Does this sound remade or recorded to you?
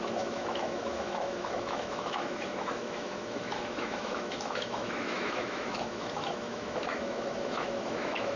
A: remade